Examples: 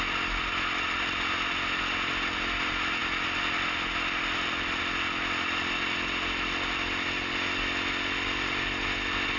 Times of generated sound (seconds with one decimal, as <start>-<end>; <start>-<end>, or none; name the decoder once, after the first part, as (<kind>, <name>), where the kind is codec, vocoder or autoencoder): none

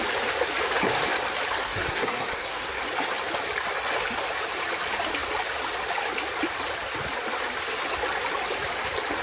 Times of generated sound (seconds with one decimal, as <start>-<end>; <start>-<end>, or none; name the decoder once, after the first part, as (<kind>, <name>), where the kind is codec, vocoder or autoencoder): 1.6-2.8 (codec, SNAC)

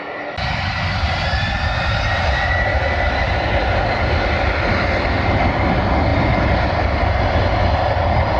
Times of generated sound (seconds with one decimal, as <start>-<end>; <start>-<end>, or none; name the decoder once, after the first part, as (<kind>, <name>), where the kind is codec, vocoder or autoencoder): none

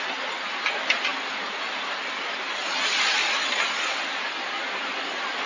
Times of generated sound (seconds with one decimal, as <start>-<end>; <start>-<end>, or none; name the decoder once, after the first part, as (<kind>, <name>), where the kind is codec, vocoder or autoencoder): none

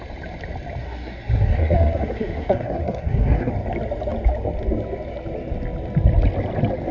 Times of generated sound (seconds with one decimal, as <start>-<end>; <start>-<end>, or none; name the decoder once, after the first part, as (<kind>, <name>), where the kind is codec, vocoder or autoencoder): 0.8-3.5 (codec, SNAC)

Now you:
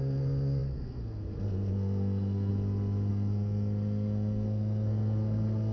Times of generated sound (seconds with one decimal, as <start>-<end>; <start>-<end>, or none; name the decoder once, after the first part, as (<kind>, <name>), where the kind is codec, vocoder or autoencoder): 0.0-2.5 (codec, SNAC); 3.1-5.7